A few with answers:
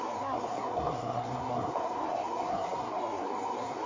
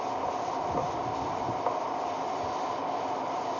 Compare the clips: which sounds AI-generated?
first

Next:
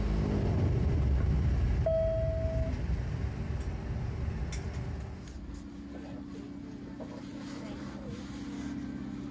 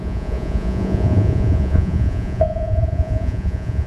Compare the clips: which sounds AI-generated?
second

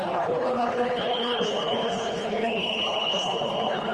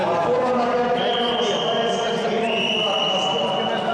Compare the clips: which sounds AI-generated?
first